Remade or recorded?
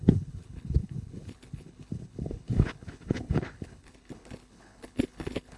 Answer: remade